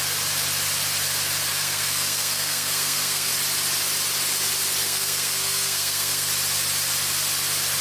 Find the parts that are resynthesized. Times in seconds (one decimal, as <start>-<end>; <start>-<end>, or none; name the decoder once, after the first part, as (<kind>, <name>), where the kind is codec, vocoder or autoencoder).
1.5-3.3 (codec, SNAC); 4.8-6.3